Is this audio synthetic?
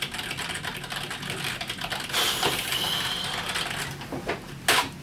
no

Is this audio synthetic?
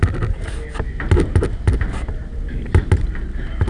no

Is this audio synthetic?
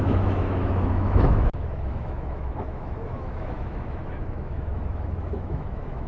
yes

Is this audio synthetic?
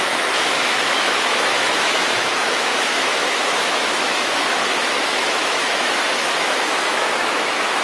yes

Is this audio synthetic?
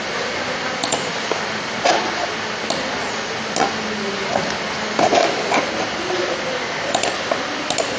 no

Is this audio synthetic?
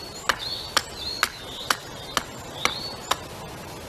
no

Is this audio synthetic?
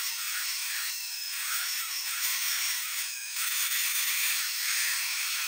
yes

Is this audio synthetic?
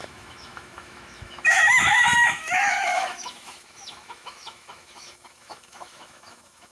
yes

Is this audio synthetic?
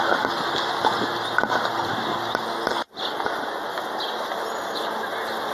no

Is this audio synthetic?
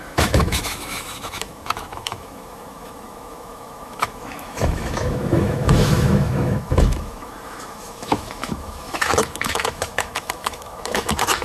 yes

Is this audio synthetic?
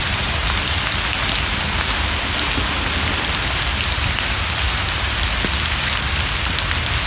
no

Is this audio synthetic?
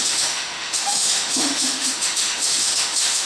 yes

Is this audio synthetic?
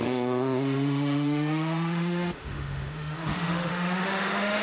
yes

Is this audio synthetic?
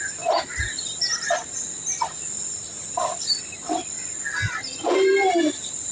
no